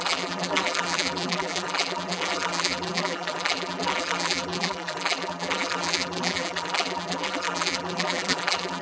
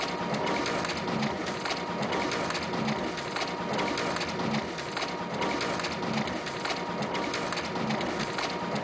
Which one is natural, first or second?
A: second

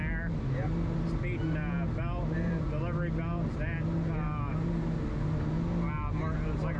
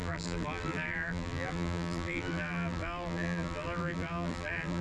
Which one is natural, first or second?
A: first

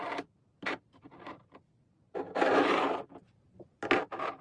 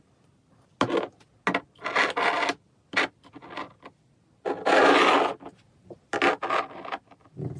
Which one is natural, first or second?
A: second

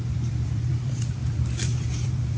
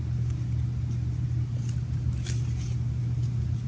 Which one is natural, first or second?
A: second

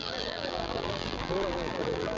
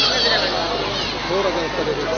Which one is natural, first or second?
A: second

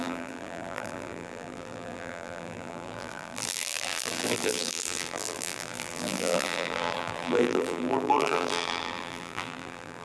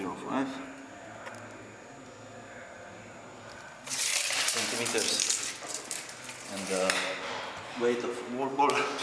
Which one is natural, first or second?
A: second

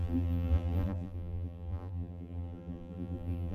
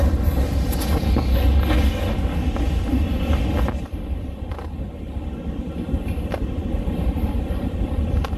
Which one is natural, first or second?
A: second